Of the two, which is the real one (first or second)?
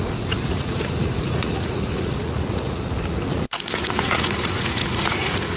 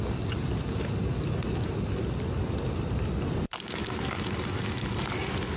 second